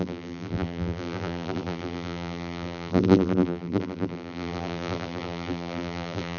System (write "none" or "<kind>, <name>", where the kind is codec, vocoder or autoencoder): vocoder, BigVGAN v2